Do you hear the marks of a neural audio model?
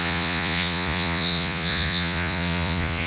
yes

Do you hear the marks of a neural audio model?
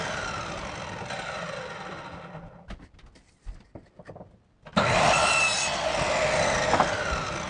no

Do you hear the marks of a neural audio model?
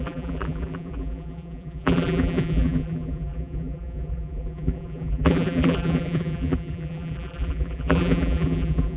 yes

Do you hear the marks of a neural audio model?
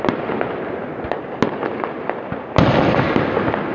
no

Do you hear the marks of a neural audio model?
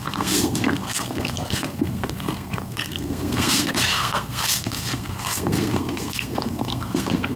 yes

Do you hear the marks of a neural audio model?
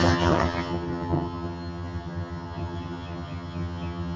yes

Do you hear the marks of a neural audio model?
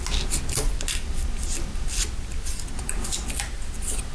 no